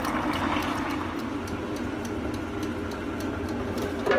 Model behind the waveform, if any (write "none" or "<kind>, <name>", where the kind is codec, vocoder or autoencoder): none